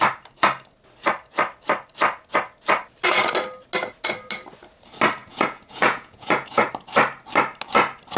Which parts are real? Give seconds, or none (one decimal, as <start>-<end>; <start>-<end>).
0.0-5.2; 6.7-8.2